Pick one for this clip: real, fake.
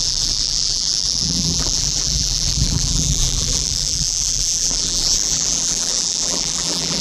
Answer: fake